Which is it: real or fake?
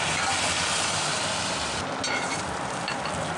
real